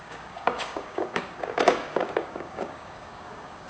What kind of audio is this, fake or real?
fake